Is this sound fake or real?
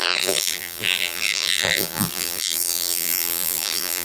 fake